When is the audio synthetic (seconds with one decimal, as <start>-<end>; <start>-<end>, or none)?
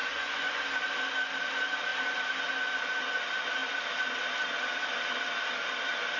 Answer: 0.0-0.6